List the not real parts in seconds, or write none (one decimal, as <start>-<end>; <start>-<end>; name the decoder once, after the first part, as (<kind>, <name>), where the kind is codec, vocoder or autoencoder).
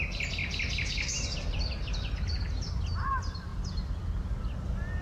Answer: none